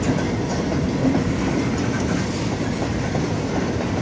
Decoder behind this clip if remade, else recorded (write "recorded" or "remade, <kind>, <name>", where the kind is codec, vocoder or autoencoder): recorded